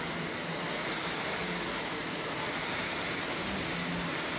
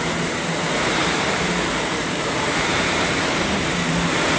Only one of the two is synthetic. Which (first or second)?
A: second